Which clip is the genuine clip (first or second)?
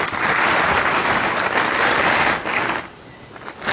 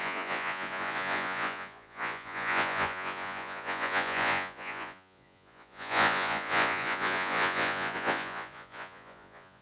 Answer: first